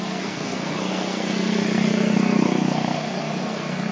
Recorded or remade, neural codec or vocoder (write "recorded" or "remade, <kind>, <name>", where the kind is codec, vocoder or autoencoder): remade, codec, SNAC